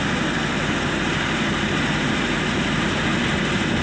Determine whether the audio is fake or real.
real